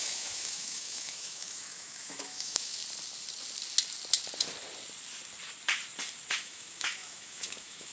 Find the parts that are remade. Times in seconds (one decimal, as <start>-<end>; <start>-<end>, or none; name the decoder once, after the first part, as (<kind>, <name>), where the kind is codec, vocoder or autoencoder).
0.0-2.8 (autoencoder, DAC-VAE); 6.3-7.9